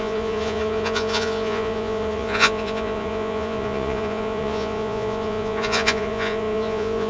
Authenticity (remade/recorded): remade